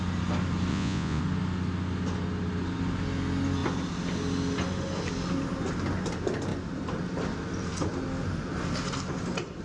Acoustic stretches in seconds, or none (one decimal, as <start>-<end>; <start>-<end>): 0.0-0.7; 1.2-9.6